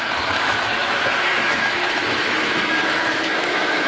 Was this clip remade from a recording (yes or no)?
yes